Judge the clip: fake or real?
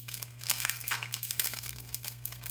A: fake